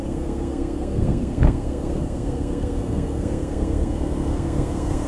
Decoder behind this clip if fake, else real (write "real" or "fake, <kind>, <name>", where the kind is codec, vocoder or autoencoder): fake, codec, SNAC